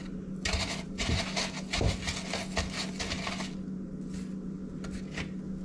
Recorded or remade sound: recorded